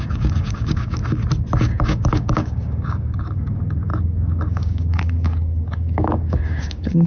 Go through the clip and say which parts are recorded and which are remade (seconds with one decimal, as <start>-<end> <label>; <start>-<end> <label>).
0.0-1.0 remade; 1.0-1.6 recorded; 1.6-7.1 remade